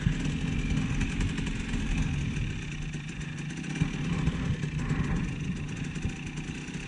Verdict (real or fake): real